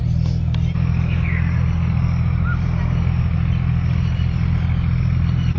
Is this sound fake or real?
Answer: real